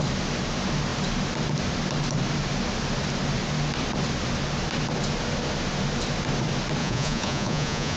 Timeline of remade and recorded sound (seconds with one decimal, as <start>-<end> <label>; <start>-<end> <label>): 0.0-6.8 recorded; 6.8-8.0 remade